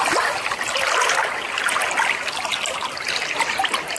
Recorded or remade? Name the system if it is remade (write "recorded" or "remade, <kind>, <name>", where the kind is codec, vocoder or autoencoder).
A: recorded